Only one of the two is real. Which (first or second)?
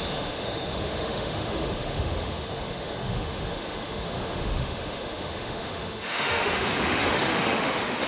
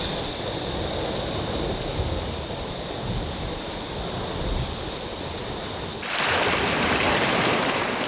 second